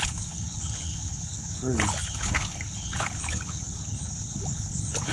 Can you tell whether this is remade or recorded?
remade